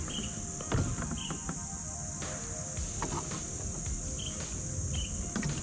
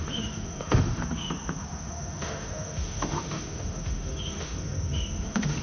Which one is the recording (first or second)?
first